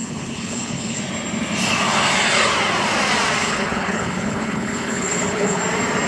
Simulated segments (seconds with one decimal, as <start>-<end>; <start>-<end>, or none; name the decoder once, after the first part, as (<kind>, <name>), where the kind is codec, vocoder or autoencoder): 0.0-1.0 (codec, HILCodec); 3.4-5.6